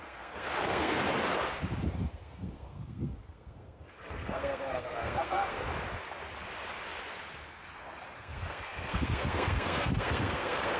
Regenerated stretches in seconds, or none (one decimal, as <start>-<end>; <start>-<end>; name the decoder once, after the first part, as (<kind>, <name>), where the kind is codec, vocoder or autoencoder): 0.0-1.0 (codec, SNAC); 2.1-5.7; 8.2-10.8